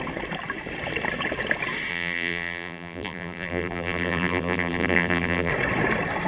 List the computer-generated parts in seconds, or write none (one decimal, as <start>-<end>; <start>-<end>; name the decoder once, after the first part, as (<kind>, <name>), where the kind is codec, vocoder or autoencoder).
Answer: 1.9-5.5 (vocoder, BigVGAN v2)